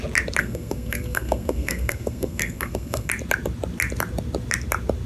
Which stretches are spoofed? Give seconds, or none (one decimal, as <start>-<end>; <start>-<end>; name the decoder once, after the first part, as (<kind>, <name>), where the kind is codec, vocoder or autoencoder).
0.4-3.1 (codec, SNAC)